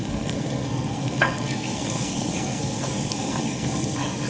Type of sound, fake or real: fake